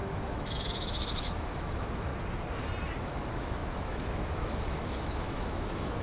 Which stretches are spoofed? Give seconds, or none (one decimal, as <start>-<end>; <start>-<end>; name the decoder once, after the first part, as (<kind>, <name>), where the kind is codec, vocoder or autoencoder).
0.0-2.1 (autoencoder, DAC-VAE); 3.0-6.0